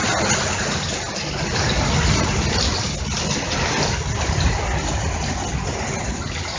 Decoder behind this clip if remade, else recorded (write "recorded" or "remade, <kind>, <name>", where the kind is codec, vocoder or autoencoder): recorded